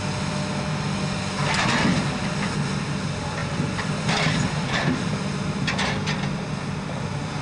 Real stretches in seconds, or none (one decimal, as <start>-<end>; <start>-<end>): 0.0-3.4; 5.2-7.4